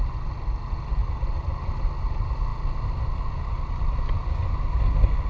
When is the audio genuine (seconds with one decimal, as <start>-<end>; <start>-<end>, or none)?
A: 0.0-5.3